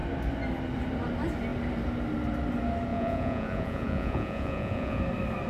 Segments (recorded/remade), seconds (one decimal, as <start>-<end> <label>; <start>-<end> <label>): 0.0-2.9 recorded; 2.9-5.0 remade; 5.0-5.5 recorded